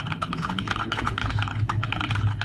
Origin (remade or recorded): remade